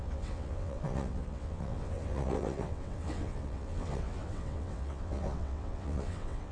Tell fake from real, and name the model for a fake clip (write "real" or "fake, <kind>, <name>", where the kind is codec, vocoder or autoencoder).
fake, vocoder, WaveNeXt